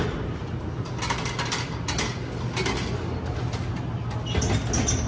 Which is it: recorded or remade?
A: recorded